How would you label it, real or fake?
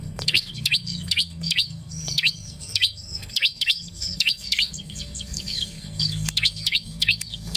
fake